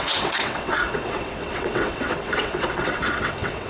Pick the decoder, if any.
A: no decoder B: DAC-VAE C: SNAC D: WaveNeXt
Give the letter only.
D